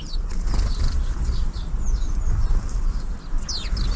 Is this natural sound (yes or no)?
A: yes